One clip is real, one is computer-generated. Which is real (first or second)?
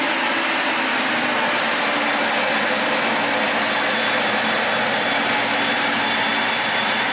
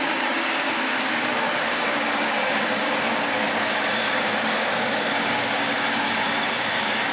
first